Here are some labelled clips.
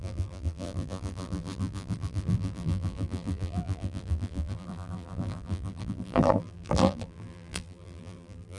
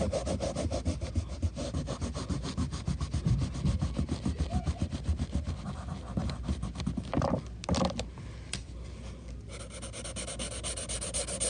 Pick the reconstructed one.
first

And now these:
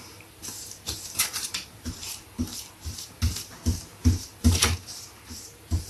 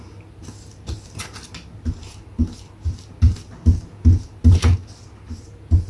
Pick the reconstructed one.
first